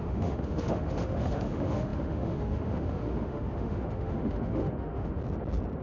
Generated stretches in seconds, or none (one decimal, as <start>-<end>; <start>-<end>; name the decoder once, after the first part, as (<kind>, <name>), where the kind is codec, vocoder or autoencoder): 0.0-5.2 (autoencoder, DAC-VAE)